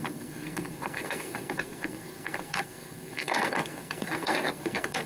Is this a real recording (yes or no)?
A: no